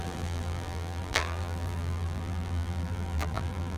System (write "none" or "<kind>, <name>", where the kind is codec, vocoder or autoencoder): vocoder, BigVGAN v2